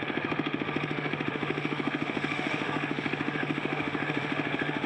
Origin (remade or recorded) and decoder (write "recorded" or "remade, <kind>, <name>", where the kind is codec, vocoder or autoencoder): remade, autoencoder, DAC-VAE